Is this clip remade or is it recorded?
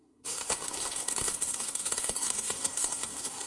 remade